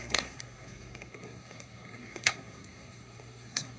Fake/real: fake